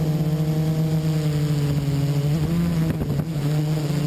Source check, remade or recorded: recorded